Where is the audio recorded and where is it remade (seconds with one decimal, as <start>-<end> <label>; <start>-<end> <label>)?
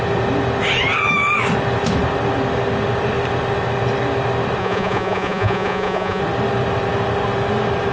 0.0-4.6 recorded; 4.6-6.2 remade; 6.2-7.9 recorded